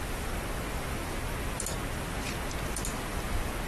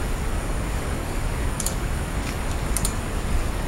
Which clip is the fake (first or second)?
second